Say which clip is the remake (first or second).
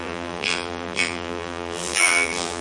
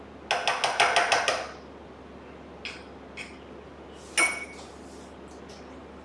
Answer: first